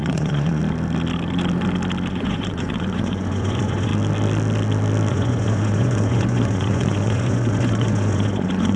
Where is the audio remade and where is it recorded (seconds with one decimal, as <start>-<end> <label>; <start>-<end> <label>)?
0.0-0.6 remade; 0.6-2.1 recorded; 2.1-3.9 remade; 3.9-5.1 recorded; 5.1-8.8 remade